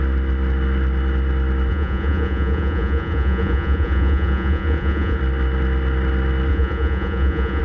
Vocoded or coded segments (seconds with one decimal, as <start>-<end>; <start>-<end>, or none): 1.7-5.2; 6.5-7.6